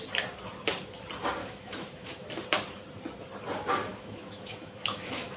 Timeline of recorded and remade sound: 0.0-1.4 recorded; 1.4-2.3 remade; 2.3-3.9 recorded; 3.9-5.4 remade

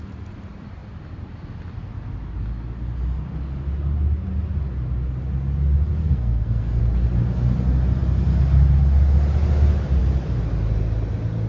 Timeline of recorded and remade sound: 0.0-6.0 recorded; 6.0-6.8 remade; 6.8-11.5 recorded

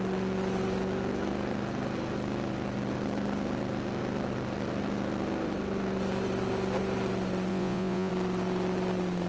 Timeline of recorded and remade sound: 0.0-7.5 recorded; 7.5-8.1 remade; 8.1-9.3 recorded